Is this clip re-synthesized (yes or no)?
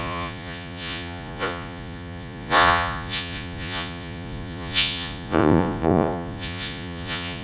yes